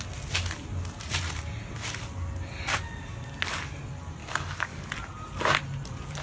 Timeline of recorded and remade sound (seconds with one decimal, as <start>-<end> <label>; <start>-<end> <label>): 0.0-4.2 recorded; 4.2-4.9 remade; 4.9-6.2 recorded

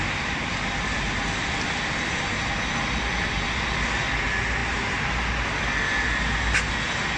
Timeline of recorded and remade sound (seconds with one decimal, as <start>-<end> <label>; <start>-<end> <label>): 0.0-7.2 recorded

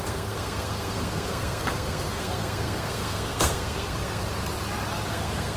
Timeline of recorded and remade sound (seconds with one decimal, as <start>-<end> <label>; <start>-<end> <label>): 0.0-4.2 remade; 4.2-5.1 recorded; 5.1-5.6 remade